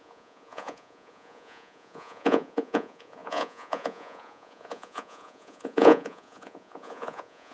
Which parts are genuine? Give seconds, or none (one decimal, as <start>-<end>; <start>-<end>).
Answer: none